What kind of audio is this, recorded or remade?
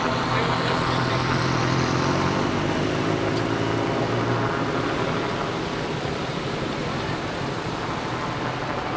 recorded